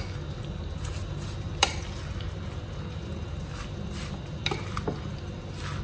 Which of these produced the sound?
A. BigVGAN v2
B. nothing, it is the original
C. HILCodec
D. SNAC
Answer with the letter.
B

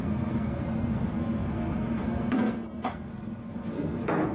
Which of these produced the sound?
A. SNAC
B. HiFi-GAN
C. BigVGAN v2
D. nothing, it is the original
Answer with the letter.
A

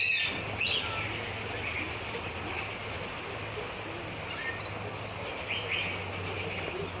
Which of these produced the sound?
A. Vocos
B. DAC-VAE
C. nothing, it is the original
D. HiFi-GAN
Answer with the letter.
C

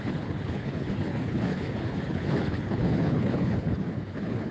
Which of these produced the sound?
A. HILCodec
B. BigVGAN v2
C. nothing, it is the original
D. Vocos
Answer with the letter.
A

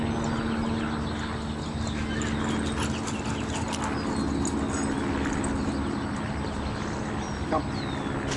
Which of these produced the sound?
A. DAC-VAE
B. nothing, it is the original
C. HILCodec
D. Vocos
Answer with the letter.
B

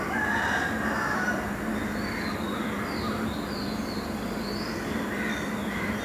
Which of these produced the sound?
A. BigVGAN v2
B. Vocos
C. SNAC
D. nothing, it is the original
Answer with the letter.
D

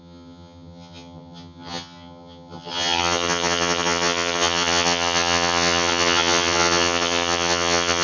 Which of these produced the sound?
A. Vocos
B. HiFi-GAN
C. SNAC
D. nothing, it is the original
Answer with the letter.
B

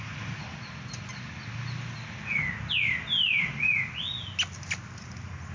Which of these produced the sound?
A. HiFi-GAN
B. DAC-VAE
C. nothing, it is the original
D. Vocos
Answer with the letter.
C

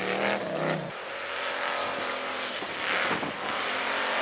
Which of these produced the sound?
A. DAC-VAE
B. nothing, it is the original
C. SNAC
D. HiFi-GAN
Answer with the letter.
B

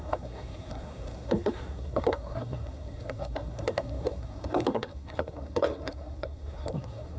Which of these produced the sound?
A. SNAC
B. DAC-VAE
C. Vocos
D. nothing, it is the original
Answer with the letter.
A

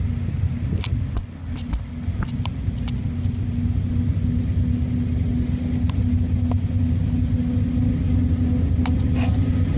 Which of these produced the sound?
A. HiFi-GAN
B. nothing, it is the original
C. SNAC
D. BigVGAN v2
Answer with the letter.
B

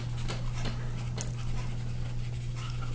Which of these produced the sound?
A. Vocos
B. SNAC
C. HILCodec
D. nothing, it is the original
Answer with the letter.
D